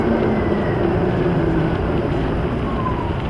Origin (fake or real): real